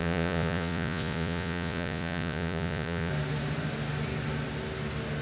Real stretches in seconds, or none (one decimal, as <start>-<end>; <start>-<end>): 3.1-5.2